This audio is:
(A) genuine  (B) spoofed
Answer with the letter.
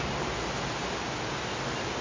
A